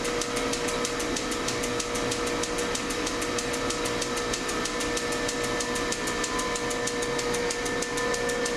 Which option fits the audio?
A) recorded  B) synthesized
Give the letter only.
A